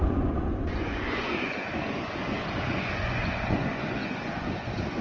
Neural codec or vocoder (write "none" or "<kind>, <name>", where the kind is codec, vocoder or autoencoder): vocoder, Vocos